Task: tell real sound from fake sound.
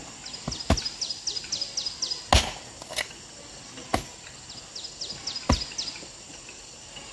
real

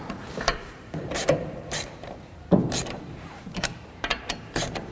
fake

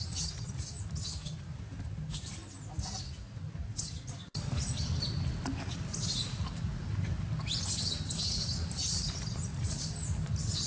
real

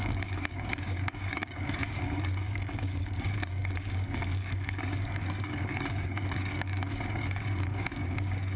fake